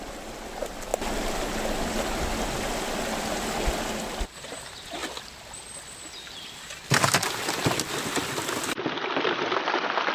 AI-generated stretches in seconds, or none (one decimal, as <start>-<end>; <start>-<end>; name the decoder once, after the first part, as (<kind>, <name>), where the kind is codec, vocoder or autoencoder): none